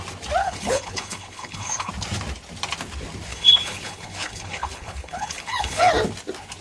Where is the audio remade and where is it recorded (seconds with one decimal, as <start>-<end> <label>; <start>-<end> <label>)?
0.0-0.4 recorded; 0.4-1.9 remade; 1.9-3.3 recorded; 3.3-5.9 remade; 5.9-6.6 recorded